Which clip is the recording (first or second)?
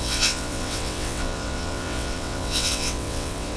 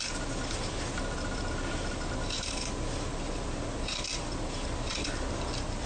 second